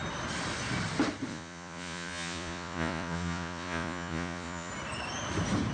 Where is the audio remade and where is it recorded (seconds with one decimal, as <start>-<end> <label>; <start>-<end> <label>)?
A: 0.0-1.3 recorded; 1.3-4.7 remade; 4.7-5.7 recorded